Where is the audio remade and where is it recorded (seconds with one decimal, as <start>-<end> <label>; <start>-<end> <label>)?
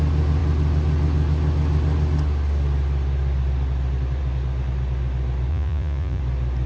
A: 0.0-5.5 recorded; 5.5-6.2 remade; 6.2-6.7 recorded